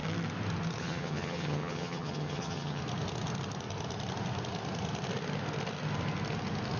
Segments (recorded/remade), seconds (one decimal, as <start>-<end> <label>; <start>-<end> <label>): 0.0-0.8 recorded; 0.8-2.8 remade; 2.8-6.8 recorded